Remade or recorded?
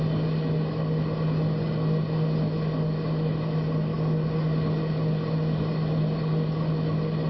recorded